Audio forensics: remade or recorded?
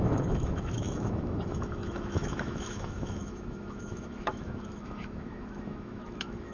remade